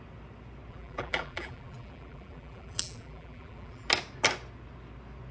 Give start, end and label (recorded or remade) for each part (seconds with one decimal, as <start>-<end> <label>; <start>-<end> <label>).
0.0-0.7 recorded; 0.7-3.9 remade; 3.9-5.3 recorded